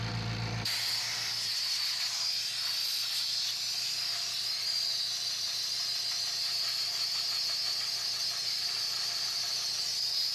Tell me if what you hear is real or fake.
real